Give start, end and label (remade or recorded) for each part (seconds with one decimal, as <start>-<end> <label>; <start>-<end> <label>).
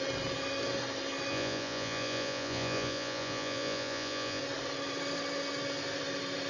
0.0-1.3 recorded; 1.3-4.4 remade; 4.4-6.5 recorded